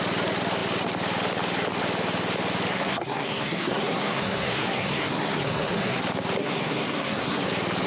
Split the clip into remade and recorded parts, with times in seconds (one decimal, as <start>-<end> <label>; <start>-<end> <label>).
0.0-2.7 recorded; 2.7-6.0 remade; 6.0-6.4 recorded; 6.4-7.5 remade; 7.5-7.9 recorded